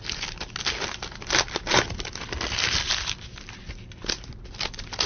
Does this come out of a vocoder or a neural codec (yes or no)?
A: no